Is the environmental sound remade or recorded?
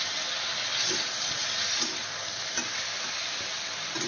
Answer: recorded